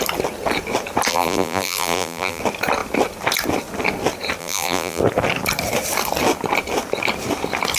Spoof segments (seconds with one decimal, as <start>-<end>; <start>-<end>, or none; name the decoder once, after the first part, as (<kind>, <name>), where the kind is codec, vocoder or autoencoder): 1.1-2.4 (vocoder, BigVGAN v2); 4.4-5.0